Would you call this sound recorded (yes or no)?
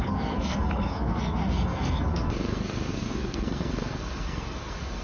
no